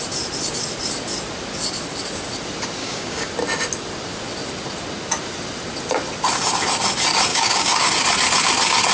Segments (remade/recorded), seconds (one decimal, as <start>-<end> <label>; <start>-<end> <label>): 0.0-2.8 recorded; 2.8-3.3 remade; 3.3-7.3 recorded; 7.3-7.9 remade; 7.9-8.9 recorded

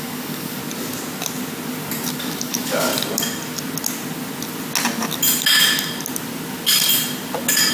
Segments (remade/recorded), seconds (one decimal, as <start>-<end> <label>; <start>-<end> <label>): 0.0-0.6 remade; 0.6-2.1 recorded; 2.1-2.9 remade; 2.9-7.7 recorded